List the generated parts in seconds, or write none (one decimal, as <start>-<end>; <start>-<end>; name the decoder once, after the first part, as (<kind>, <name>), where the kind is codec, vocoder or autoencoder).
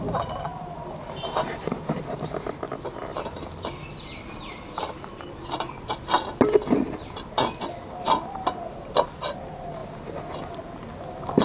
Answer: none